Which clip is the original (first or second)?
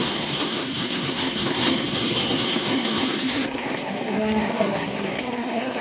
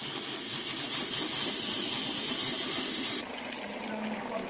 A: second